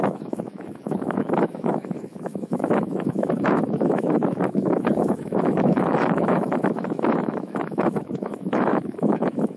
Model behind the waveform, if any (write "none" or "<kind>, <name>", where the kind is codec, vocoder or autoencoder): autoencoder, DAC-VAE